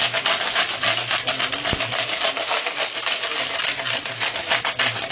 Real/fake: real